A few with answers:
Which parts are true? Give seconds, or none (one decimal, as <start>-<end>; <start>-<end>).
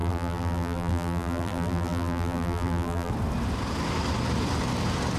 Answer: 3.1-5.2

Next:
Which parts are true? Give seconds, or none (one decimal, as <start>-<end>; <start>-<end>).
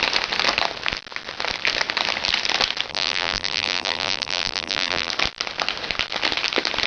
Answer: 0.0-2.9; 5.1-6.9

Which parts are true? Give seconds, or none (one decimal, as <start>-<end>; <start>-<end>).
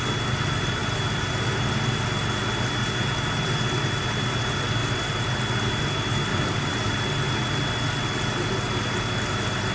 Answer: 0.0-6.3; 6.9-9.7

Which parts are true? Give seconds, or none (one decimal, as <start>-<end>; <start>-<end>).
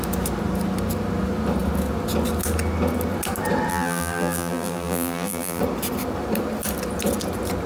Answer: 0.0-3.7; 5.6-7.7